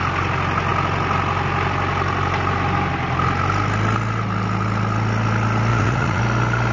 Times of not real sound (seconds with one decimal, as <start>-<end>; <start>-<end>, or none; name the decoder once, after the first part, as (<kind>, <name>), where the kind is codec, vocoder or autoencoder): 5.7-6.2 (vocoder, Vocos)